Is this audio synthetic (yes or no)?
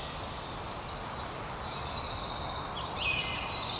no